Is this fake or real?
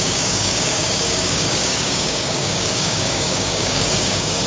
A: fake